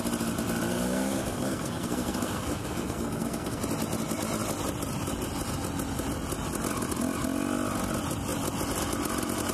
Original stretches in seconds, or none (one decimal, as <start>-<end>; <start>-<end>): 0.0-0.7; 3.6-9.5